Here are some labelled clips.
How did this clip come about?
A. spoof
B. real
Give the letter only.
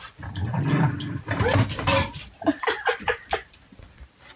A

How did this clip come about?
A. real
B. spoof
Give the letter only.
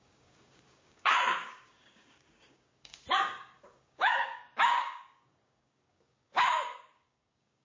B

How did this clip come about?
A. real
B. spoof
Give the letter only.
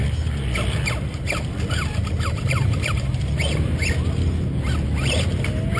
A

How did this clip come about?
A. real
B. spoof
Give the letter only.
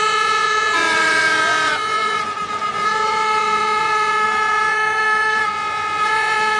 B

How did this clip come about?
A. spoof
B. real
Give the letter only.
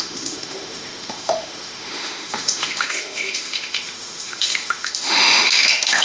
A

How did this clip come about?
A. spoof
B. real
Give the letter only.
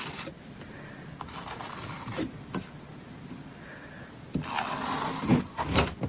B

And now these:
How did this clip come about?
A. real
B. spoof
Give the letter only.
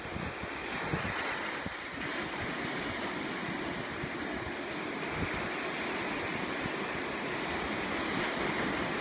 A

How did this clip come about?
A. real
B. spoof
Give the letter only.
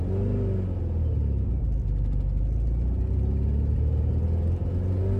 A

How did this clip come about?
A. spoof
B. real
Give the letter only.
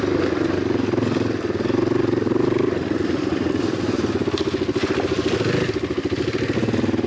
B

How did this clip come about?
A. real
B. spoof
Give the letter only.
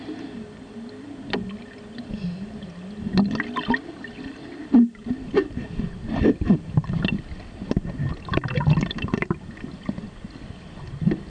A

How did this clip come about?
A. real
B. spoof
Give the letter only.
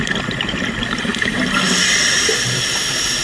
A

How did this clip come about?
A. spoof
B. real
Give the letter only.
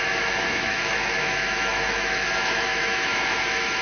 A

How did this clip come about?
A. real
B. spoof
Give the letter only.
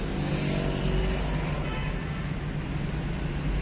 A